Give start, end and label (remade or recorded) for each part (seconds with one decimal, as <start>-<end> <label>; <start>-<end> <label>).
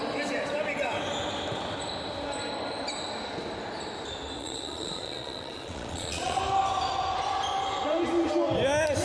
0.0-4.4 recorded; 4.4-6.4 remade; 6.4-9.0 recorded